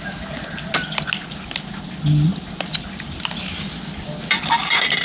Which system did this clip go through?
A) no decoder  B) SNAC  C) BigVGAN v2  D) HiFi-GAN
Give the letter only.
A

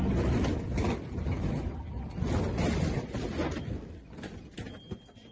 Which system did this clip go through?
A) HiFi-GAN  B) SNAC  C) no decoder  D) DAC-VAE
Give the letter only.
C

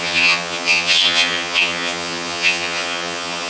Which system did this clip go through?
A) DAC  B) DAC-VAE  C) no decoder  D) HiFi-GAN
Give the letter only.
D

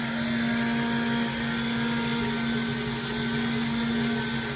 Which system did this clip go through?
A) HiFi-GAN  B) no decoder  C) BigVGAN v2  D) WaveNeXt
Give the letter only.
B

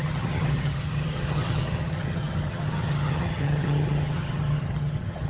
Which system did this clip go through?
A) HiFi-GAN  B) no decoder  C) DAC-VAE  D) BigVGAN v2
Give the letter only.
A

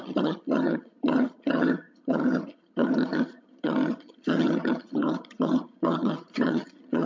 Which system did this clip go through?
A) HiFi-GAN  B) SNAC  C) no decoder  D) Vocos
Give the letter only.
A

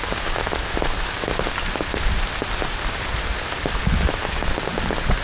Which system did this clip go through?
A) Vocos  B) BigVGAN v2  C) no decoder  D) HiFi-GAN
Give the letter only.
C